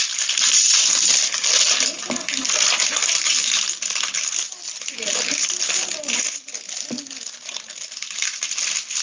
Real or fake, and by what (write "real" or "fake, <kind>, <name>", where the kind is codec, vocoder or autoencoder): real